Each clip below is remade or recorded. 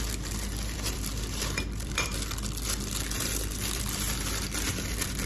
remade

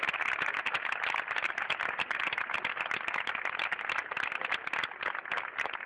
recorded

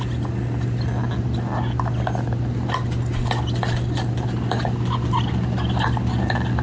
recorded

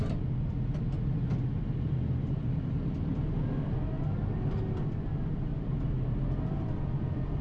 recorded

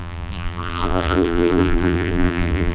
remade